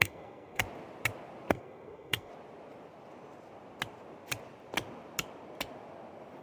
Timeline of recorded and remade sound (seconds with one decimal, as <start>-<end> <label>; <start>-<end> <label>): 0.0-0.6 remade; 0.6-1.5 recorded; 1.5-2.3 remade; 2.3-6.4 recorded